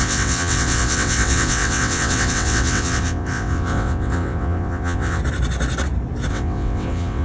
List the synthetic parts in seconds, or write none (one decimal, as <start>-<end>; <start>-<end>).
0.0-5.2; 6.3-7.2